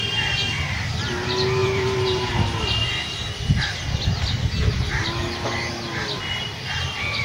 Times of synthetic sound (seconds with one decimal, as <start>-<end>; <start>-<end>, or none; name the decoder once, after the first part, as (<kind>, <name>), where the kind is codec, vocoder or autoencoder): 1.6-2.3 (vocoder, BigVGAN v2)